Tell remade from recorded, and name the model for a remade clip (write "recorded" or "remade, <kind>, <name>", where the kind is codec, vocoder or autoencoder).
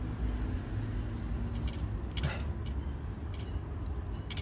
recorded